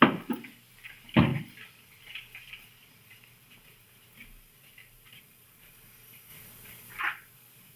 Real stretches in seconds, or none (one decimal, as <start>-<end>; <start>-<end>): 0.0-1.3; 5.7-6.3; 7.0-7.8